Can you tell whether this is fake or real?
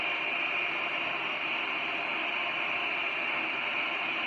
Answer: real